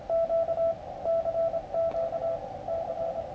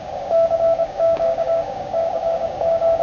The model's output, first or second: second